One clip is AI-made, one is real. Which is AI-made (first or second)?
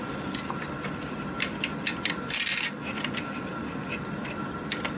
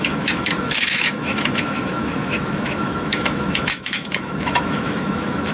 second